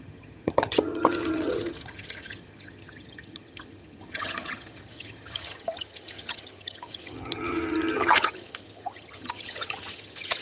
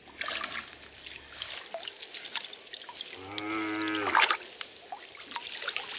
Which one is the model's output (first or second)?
first